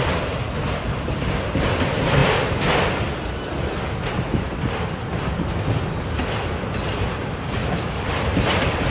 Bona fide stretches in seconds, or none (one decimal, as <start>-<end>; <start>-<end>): 0.0-7.6; 8.1-8.9